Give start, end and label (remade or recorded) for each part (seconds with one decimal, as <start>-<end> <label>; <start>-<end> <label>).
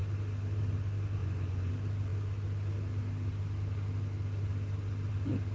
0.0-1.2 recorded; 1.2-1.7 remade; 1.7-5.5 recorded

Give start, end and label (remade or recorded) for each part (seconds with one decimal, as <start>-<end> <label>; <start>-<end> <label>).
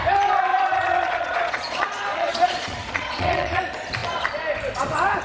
0.0-0.5 recorded; 0.5-3.6 remade; 3.6-5.2 recorded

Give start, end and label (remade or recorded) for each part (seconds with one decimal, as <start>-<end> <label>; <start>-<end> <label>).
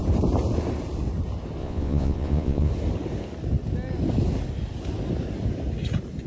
0.0-1.6 recorded; 1.6-2.7 remade; 2.7-6.3 recorded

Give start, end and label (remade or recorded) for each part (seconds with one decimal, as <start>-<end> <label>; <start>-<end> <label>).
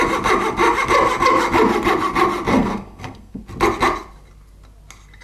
0.0-2.5 recorded; 2.5-3.4 remade; 3.4-5.2 recorded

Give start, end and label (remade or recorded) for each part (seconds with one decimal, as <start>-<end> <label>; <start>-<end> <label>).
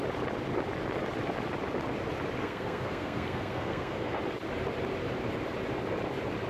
0.0-2.4 recorded; 2.4-4.2 remade; 4.2-6.5 recorded